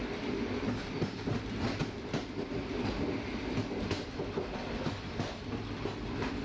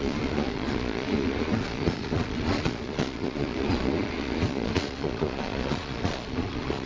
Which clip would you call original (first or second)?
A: first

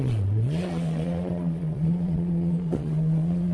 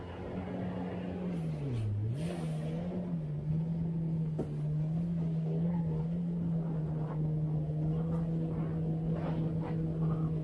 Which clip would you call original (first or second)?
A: second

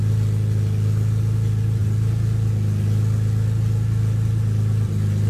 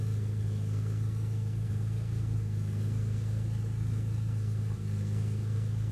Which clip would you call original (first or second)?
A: first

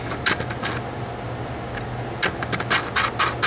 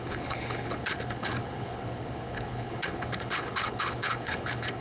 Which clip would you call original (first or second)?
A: first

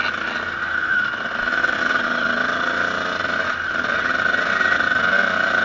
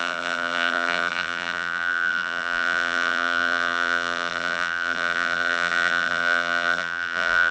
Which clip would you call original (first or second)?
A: first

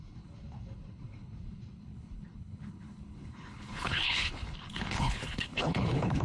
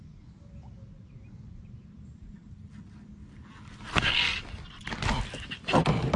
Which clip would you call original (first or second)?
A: second